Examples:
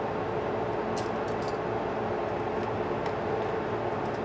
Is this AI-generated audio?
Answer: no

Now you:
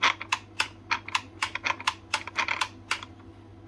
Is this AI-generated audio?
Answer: no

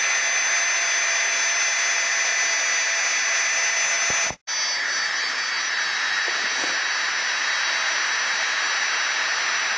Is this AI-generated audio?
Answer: no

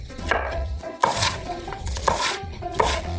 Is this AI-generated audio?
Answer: yes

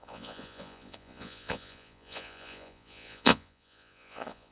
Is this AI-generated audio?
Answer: yes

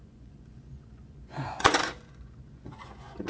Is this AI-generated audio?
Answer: yes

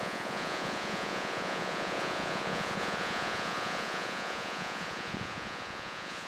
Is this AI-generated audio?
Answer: yes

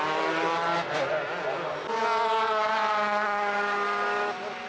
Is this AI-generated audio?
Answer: no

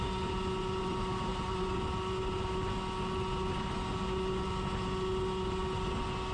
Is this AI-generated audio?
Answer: no